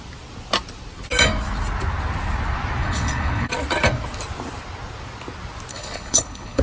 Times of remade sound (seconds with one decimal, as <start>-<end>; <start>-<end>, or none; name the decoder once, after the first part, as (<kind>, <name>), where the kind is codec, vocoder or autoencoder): 2.8-3.5 (codec, HILCodec); 5.7-6.6